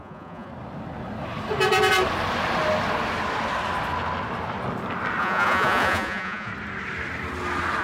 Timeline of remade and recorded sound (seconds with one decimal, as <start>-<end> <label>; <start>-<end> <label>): 0.0-0.5 remade; 0.5-5.2 recorded; 5.2-6.5 remade; 6.5-7.8 recorded